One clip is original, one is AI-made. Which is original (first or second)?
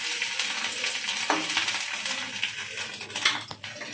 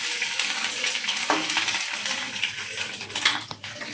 first